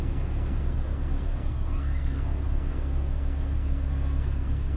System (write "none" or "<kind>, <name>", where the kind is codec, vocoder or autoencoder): codec, SNAC